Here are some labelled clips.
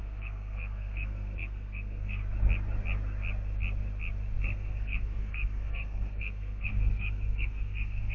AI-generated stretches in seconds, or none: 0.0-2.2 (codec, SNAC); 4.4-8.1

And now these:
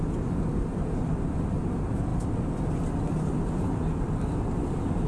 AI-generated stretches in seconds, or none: none

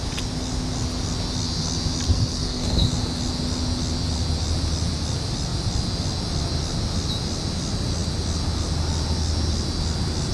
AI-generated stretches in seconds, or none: 2.1-2.9 (codec, SNAC)

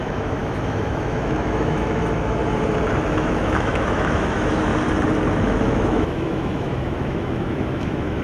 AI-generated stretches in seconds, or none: 0.0-2.4 (autoencoder, DAC-VAE); 3.1-4.7; 5.4-8.2

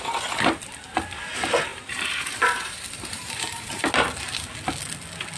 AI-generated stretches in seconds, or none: 1.7-3.8 (vocoder, BigVGAN v2)

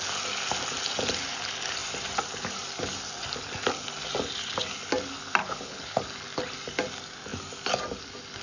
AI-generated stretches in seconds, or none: 5.4-6.0 (codec, HILCodec)

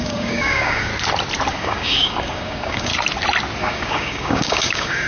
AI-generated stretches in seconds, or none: 0.0-0.9 (codec, DAC); 1.5-2.9; 3.6-5.1